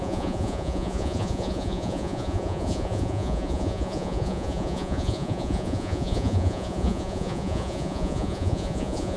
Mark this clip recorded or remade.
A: remade